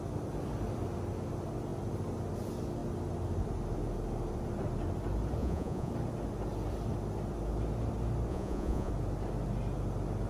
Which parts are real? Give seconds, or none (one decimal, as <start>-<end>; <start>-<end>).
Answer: 0.0-5.4; 5.9-8.3; 8.9-10.3